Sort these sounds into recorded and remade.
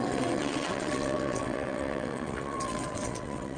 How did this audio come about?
remade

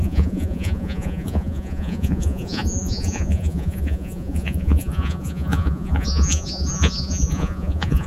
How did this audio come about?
remade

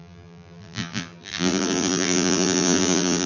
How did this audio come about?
remade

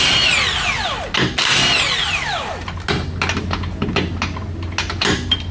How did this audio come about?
recorded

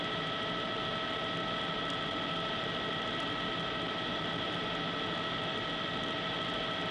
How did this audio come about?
recorded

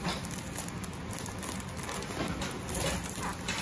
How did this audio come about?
recorded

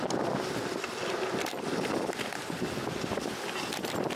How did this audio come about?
recorded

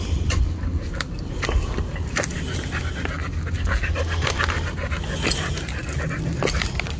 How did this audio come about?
recorded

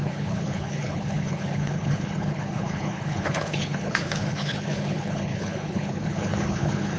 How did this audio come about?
remade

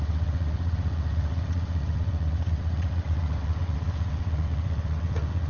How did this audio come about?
remade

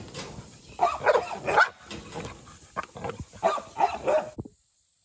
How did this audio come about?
recorded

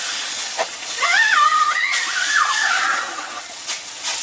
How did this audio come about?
remade